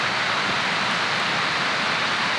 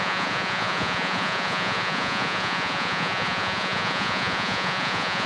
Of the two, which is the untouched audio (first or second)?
first